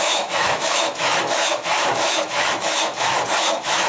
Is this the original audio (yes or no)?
no